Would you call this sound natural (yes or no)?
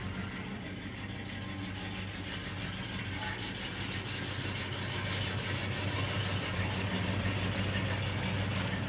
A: yes